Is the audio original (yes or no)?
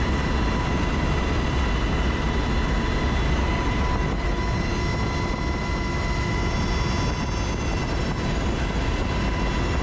yes